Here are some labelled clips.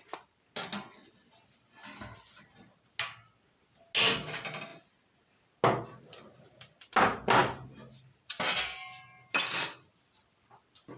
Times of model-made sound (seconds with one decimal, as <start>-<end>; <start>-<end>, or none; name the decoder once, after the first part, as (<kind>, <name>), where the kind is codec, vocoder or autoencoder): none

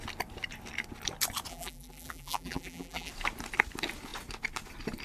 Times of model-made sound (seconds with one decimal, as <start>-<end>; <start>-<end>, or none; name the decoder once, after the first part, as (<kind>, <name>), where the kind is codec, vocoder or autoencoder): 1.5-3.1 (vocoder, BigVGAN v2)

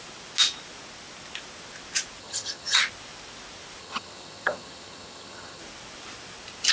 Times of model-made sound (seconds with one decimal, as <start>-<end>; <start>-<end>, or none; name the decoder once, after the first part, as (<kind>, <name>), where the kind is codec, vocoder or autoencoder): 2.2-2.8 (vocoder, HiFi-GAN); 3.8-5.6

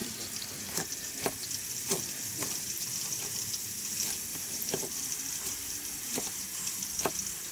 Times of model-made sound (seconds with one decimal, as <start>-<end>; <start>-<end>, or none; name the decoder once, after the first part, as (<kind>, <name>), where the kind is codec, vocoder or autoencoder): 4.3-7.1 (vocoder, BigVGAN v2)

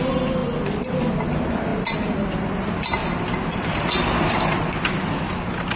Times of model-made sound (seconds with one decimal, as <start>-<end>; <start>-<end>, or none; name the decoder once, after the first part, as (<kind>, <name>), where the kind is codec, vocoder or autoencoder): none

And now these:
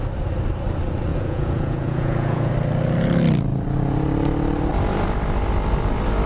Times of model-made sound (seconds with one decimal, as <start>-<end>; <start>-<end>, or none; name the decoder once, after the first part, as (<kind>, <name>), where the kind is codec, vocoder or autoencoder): 1.1-2.5 (vocoder, Vocos)